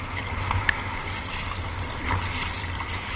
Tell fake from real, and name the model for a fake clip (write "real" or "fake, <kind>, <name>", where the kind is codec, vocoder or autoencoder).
real